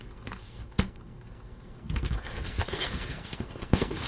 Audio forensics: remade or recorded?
remade